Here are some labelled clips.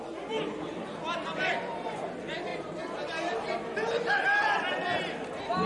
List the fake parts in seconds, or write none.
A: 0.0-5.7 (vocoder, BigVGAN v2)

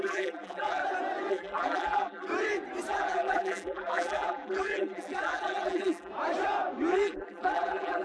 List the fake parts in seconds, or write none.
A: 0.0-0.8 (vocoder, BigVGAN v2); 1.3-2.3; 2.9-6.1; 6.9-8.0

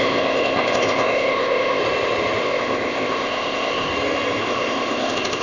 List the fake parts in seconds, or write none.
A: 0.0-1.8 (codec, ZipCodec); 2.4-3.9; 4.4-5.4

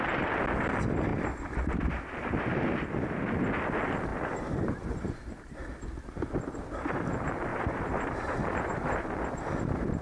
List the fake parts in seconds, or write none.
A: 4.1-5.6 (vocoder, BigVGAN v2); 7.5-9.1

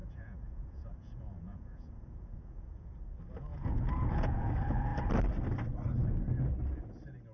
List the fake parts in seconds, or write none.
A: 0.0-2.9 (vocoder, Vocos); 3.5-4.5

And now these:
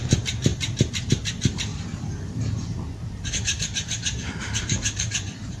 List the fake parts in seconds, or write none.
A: 0.0-5.6 (vocoder, BigVGAN v2)

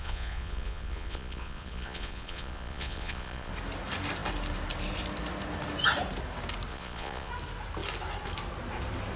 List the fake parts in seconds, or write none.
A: 0.0-3.5 (vocoder, Vocos); 6.7-7.3